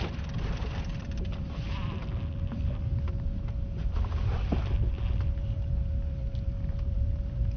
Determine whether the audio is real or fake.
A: fake